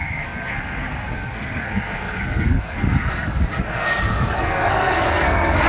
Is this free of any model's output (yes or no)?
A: no